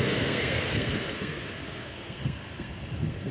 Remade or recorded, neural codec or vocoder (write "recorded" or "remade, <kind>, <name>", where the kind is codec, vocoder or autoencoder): remade, codec, SNAC